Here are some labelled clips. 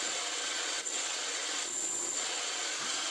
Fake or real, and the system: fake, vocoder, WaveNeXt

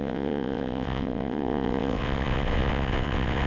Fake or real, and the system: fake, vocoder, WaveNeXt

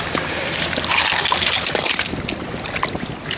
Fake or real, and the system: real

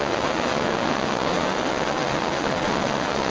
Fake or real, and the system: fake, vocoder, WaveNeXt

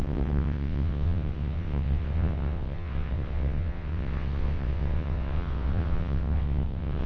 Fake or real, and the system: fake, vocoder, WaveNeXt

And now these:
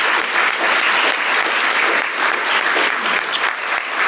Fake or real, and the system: real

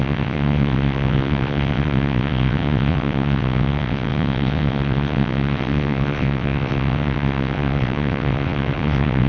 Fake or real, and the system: fake, vocoder, WaveNeXt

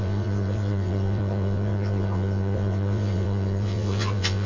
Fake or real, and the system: fake, vocoder, WaveNeXt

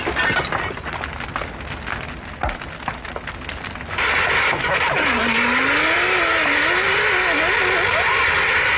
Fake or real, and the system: real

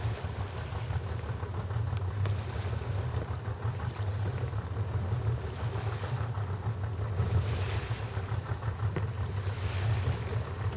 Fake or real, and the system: real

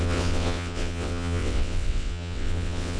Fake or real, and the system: fake, vocoder, WaveNeXt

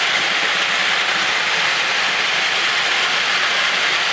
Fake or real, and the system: real